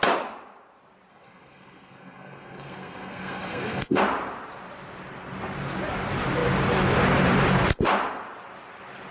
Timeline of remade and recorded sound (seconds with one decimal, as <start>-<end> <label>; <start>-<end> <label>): 0.0-1.1 recorded; 1.1-4.0 remade; 4.0-9.1 recorded